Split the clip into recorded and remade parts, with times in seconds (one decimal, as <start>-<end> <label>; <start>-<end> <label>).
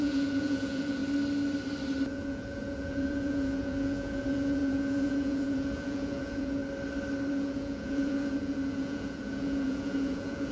0.0-1.0 remade; 1.0-2.1 recorded; 2.1-6.6 remade; 6.6-7.3 recorded; 7.3-10.5 remade